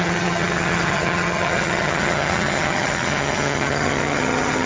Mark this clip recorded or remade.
remade